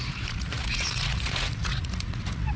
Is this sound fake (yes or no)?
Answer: yes